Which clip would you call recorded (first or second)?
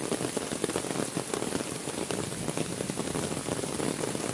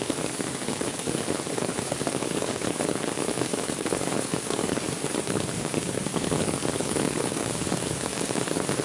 first